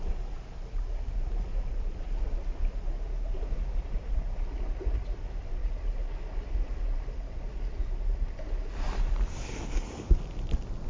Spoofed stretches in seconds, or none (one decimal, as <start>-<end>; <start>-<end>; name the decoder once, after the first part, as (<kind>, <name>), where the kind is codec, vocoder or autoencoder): none

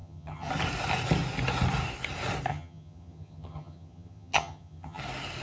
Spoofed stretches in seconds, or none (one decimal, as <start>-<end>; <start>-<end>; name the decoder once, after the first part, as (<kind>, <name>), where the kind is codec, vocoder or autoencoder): 0.0-0.5 (vocoder, HiFi-GAN); 2.5-5.0

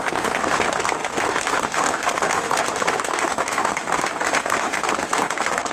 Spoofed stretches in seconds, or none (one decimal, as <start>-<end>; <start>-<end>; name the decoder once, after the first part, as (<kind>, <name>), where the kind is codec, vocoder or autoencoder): 0.0-5.7 (autoencoder, DAC-VAE)

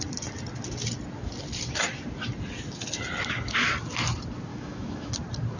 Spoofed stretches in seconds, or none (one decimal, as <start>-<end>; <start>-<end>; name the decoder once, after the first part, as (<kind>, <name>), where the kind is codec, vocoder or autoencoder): 4.5-5.1 (autoencoder, DAC-VAE)

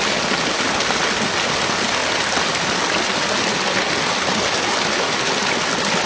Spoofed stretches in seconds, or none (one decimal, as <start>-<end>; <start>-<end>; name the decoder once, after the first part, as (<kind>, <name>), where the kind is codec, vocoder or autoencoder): none

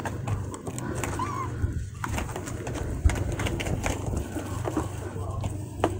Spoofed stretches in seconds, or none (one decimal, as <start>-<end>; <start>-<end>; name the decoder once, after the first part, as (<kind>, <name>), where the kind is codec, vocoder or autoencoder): 0.0-0.7 (vocoder, BigVGAN v2); 2.3-5.2

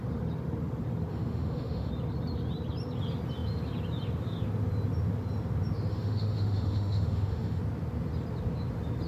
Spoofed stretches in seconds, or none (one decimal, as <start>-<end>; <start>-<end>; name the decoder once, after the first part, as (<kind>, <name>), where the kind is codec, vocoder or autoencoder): 1.1-1.9 (autoencoder, DAC-VAE); 5.9-7.6